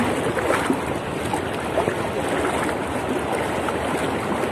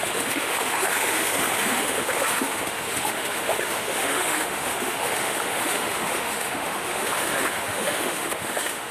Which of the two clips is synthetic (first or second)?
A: second